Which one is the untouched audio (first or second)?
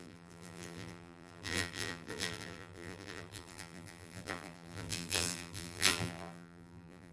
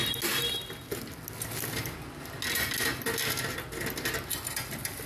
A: second